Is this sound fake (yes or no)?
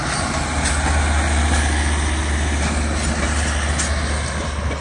no